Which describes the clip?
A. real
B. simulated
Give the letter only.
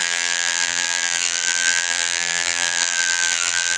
B